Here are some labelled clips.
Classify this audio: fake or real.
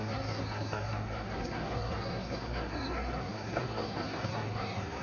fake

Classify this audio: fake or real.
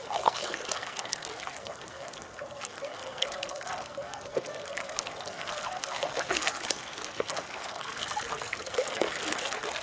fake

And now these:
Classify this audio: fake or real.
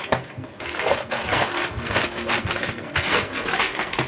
fake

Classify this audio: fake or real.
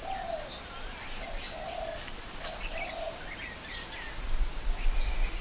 real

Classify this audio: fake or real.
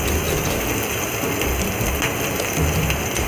real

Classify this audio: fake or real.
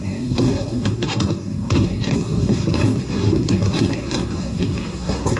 fake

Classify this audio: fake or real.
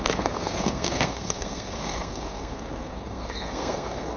fake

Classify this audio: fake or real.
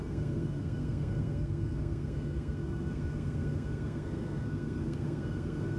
fake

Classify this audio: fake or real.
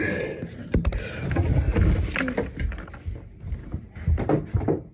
real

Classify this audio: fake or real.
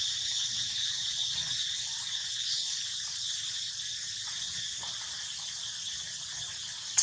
real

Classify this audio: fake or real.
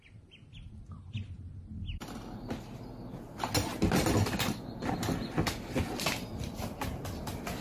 real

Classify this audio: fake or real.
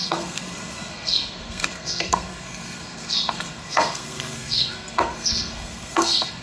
fake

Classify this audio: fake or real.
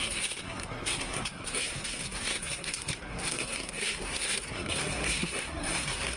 fake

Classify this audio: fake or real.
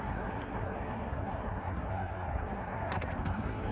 fake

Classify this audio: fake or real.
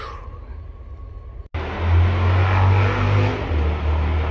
real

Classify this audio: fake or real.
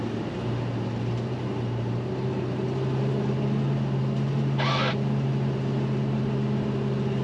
real